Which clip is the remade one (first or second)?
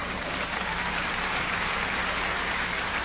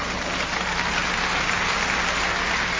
first